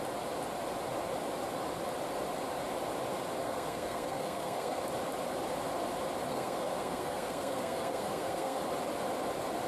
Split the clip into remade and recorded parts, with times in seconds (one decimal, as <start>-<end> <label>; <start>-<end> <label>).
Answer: 0.0-3.4 recorded; 3.4-4.8 remade; 4.8-6.3 recorded; 6.3-8.6 remade; 8.6-9.7 recorded